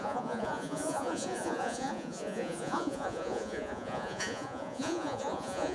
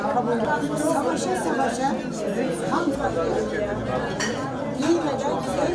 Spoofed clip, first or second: first